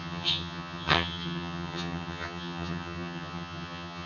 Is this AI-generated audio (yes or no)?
yes